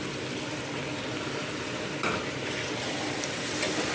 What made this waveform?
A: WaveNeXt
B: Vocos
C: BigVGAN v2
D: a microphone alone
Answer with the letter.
D